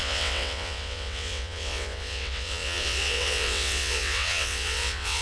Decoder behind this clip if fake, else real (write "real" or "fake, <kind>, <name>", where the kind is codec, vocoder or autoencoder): fake, vocoder, WaveNeXt